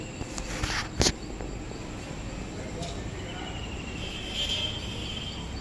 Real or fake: real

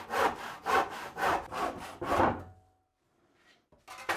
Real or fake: real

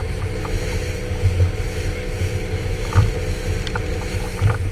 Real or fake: real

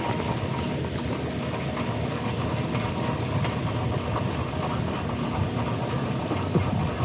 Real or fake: real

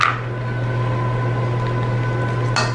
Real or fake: real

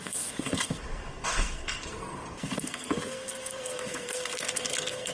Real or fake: fake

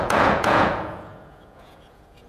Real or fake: fake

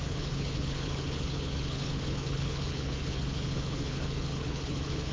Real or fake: fake